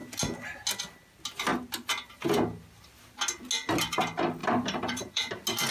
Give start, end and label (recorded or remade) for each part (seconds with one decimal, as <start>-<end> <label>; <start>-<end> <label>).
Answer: 0.0-4.4 recorded; 4.4-5.3 remade; 5.3-5.7 recorded